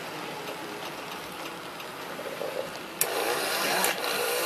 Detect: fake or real real